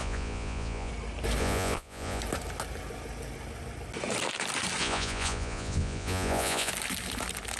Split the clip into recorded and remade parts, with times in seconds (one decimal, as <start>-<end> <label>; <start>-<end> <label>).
0.0-0.9 remade; 0.9-1.4 recorded; 1.4-2.2 remade; 2.2-4.8 recorded; 4.8-6.7 remade; 6.7-7.6 recorded